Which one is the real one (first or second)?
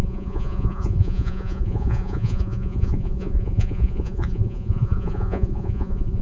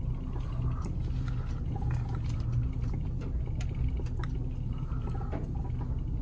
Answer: second